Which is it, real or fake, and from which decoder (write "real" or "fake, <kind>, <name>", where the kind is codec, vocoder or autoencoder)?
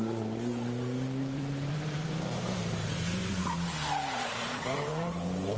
fake, vocoder, BigVGAN v2